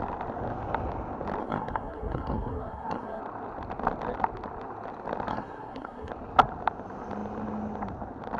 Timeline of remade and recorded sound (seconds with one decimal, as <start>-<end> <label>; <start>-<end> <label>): 0.0-1.4 recorded; 1.4-3.2 remade; 3.2-5.3 recorded; 5.3-6.1 remade; 6.1-8.4 recorded